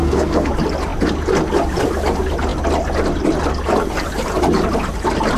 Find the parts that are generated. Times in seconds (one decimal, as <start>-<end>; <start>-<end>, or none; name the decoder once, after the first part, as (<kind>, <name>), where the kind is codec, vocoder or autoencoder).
0.0-0.5 (codec, SNAC)